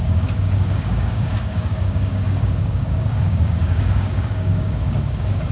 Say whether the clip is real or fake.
fake